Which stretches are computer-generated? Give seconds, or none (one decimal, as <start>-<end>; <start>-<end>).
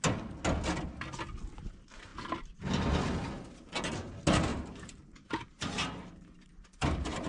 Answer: 4.5-7.3